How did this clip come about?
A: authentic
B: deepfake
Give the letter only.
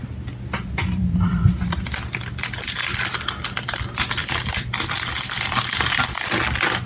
A